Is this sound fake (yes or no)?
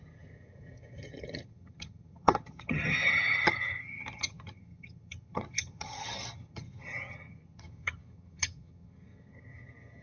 yes